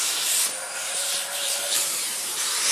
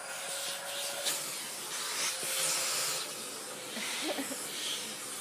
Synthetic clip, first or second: first